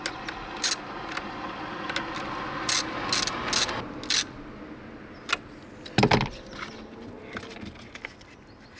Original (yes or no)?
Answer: yes